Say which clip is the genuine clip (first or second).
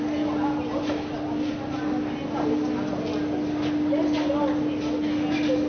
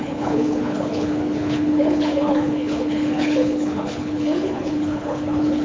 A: first